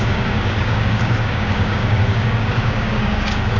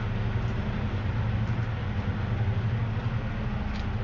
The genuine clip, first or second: second